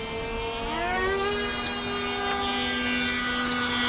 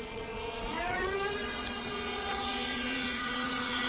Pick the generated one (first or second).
second